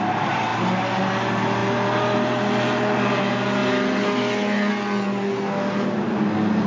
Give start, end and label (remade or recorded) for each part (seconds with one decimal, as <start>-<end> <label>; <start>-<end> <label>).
0.0-6.7 recorded